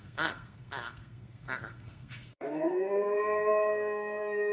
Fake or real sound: fake